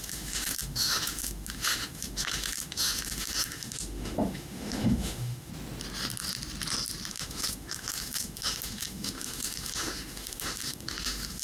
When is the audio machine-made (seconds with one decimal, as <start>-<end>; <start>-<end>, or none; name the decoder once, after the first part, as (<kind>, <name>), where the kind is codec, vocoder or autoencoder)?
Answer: 0.0-5.5 (autoencoder, DAC-VAE); 7.1-11.4